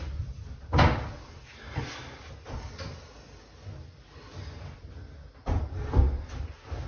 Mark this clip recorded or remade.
recorded